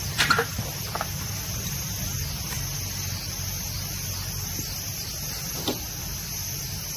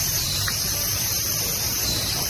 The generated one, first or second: second